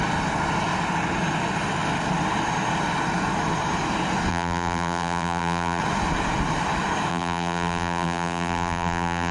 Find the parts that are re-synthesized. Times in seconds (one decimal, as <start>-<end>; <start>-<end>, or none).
4.3-5.8; 7.1-9.3